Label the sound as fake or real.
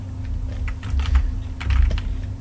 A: fake